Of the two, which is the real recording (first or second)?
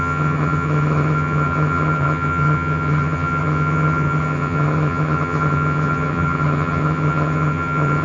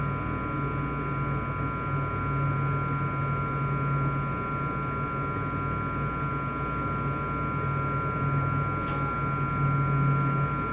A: second